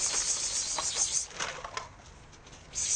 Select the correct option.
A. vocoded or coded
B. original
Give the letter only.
B